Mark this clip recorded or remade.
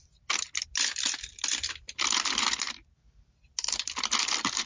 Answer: recorded